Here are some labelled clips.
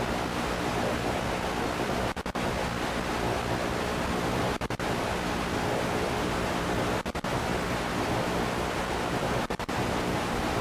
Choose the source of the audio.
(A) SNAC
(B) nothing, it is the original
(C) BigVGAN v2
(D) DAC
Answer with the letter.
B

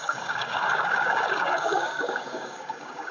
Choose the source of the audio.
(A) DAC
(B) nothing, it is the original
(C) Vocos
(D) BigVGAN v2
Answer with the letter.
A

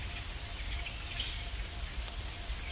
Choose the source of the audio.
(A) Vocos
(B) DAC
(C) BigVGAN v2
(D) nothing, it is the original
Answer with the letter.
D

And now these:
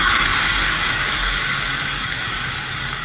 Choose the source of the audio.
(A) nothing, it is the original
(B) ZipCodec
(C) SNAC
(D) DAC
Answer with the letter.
D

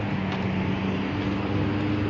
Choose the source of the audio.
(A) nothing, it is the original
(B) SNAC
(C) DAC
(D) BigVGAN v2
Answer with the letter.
A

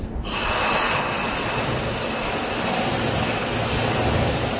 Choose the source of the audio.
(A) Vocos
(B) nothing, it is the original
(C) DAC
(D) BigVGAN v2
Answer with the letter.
B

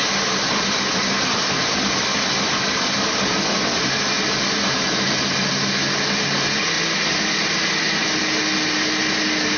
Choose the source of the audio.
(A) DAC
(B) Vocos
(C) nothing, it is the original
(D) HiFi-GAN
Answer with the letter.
C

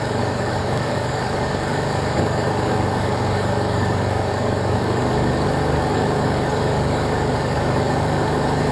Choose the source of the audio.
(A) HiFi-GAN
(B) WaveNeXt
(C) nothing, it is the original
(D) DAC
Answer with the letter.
D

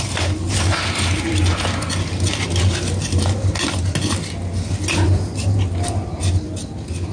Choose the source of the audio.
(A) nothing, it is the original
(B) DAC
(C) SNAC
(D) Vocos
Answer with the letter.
A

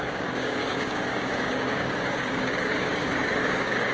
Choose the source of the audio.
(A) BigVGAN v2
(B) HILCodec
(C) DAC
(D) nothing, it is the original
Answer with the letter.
C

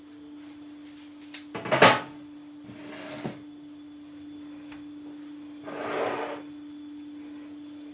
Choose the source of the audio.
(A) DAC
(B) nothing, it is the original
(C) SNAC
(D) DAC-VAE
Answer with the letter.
B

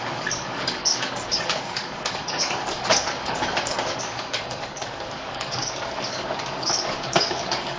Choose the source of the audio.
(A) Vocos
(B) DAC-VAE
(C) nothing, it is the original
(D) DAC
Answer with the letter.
D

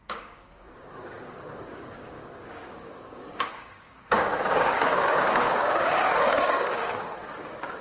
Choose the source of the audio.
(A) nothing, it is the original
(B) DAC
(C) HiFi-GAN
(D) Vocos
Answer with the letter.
B